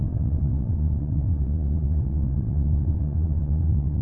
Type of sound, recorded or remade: remade